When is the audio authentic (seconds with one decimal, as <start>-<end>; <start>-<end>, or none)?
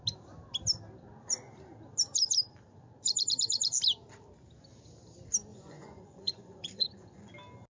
0.0-5.5; 7.3-7.7